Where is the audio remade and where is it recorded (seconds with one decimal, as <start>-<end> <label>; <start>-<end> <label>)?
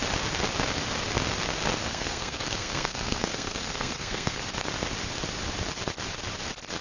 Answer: 0.0-1.9 recorded; 1.9-4.4 remade; 4.4-6.8 recorded